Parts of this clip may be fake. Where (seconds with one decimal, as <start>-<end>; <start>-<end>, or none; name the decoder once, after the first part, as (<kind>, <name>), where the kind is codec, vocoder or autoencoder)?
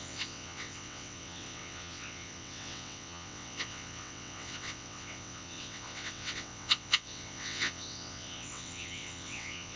0.0-9.8 (vocoder, WaveNeXt)